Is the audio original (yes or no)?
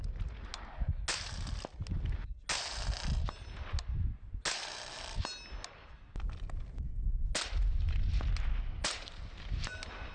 yes